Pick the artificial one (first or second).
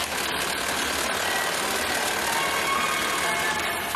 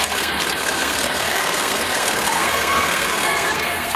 second